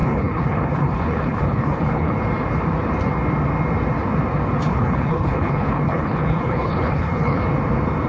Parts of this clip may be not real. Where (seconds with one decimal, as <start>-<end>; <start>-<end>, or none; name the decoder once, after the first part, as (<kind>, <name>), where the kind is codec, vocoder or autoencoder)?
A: 0.0-2.2 (codec, HILCodec); 4.7-7.4